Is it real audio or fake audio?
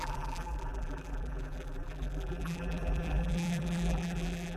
fake